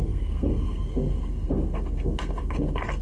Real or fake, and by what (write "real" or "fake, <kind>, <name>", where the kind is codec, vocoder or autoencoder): fake, codec, SNAC